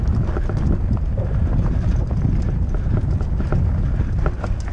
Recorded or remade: recorded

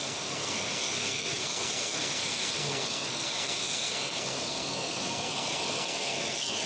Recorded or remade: remade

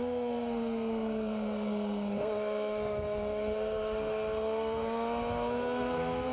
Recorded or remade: remade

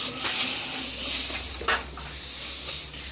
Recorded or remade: remade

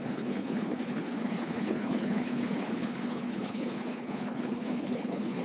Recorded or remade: remade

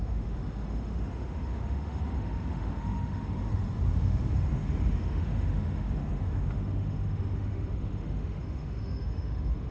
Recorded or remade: remade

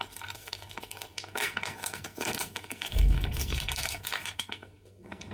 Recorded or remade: remade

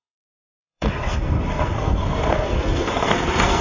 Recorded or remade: remade